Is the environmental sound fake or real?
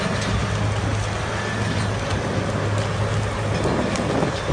real